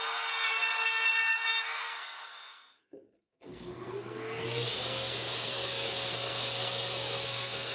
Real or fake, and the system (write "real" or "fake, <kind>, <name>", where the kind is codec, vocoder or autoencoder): fake, codec, SNAC